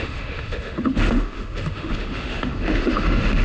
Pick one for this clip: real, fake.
fake